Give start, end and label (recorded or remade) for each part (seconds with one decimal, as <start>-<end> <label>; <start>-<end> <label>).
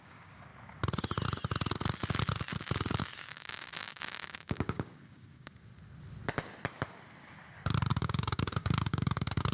0.0-0.5 remade; 0.5-3.0 recorded; 3.0-5.7 remade; 5.7-7.9 recorded; 7.9-9.5 remade